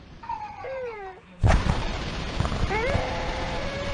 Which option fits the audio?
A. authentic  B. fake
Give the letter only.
B